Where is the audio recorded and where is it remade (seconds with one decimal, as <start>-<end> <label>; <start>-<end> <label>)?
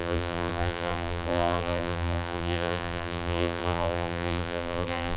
0.0-5.2 remade